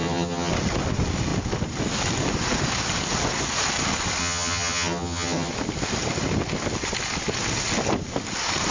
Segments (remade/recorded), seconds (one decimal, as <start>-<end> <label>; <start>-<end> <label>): 0.0-0.5 remade; 0.5-4.2 recorded; 4.2-5.5 remade; 5.5-8.7 recorded

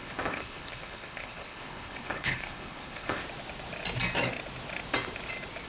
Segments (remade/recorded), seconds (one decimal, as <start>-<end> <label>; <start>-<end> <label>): 0.0-3.2 remade; 3.2-5.7 recorded

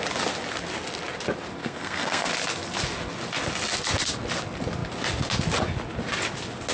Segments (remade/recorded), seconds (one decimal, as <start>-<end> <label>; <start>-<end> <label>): 0.0-1.6 recorded; 1.6-2.3 remade; 2.3-6.7 recorded

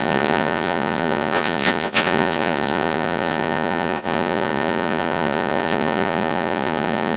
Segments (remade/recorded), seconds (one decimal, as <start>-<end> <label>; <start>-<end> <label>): 0.0-7.2 remade

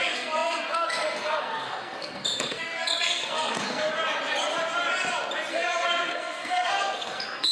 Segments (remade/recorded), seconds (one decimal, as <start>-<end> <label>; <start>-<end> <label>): 0.0-3.9 remade; 3.9-5.5 recorded; 5.5-7.5 remade

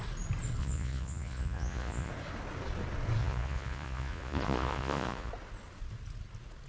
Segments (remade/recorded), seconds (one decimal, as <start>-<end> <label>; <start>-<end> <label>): 0.0-0.6 recorded; 0.6-2.1 remade; 2.1-3.2 recorded; 3.2-5.3 remade; 5.3-6.7 recorded